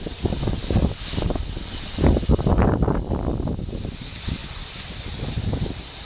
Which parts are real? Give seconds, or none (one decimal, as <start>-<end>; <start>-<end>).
0.0-6.0